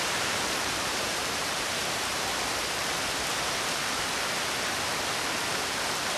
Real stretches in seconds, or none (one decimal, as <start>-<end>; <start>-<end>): 1.8-5.5